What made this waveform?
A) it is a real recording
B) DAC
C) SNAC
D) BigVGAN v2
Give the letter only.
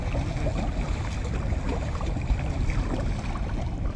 A